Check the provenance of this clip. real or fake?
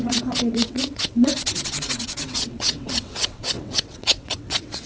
fake